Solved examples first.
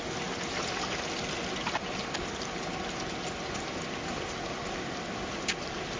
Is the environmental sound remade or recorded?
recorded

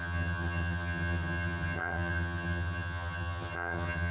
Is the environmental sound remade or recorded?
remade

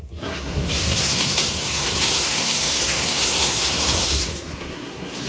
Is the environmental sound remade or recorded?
remade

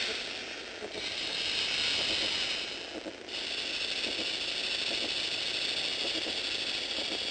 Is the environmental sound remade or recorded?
recorded